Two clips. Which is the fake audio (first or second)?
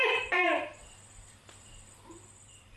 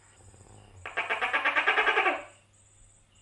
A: first